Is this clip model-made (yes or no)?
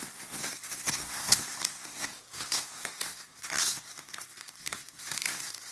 yes